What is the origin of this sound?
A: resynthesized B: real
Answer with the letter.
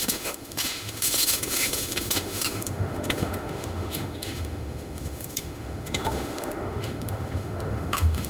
A